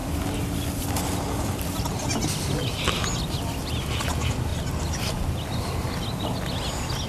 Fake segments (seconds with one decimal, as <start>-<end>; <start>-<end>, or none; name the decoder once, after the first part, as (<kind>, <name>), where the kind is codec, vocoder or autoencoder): 0.0-1.6 (vocoder, BigVGAN v2)